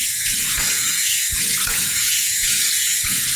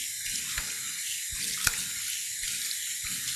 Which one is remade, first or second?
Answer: first